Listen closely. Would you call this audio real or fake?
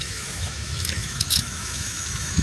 fake